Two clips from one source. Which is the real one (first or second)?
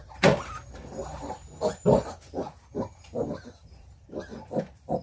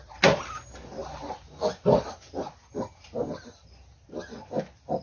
second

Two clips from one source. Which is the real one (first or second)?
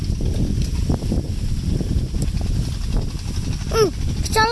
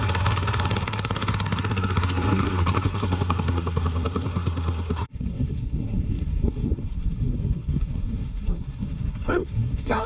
first